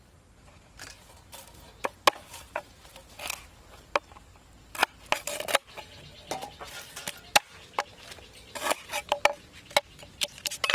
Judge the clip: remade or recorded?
recorded